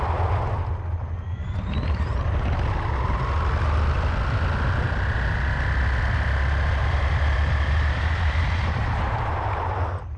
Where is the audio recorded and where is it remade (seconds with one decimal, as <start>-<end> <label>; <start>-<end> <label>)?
0.0-6.8 recorded; 6.8-9.3 remade; 9.3-10.2 recorded